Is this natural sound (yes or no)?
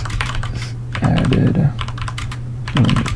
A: no